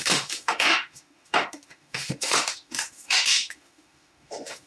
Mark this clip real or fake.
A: fake